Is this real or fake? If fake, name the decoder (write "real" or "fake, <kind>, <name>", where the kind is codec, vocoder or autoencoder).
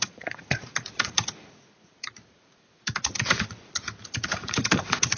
fake, vocoder, Vocos